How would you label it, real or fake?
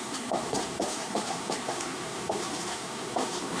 fake